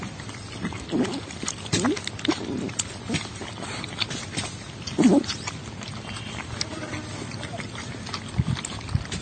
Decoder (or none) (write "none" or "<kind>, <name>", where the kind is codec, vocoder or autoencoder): none